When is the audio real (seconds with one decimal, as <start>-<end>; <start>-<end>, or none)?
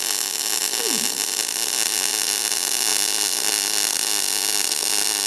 0.0-5.3